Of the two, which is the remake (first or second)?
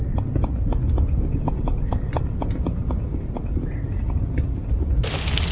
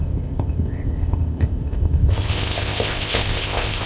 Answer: second